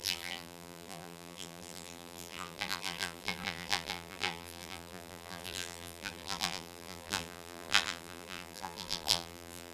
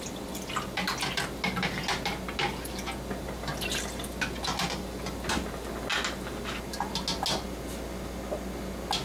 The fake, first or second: first